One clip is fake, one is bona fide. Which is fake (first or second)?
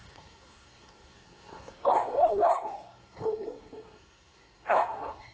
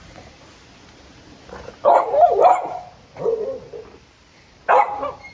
first